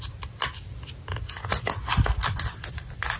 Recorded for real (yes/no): yes